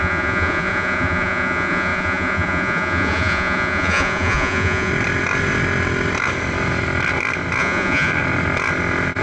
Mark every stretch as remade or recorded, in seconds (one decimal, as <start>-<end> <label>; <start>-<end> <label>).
0.0-4.9 remade; 4.9-7.6 recorded; 7.6-8.1 remade; 8.1-9.2 recorded